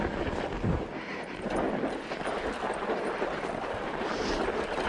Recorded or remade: recorded